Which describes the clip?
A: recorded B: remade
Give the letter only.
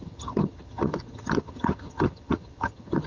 B